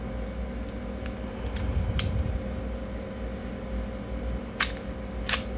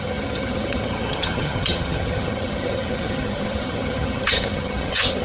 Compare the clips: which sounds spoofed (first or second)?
second